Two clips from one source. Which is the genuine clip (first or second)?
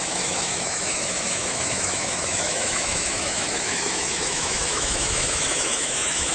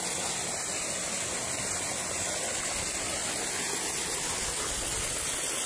second